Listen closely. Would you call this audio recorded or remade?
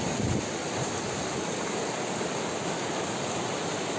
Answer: recorded